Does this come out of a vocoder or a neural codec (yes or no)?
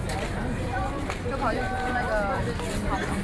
no